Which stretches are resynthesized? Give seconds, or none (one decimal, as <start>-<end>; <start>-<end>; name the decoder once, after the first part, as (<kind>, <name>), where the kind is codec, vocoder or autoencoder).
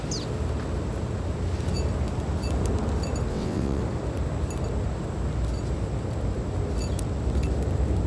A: 3.3-3.8 (vocoder, WaveNeXt)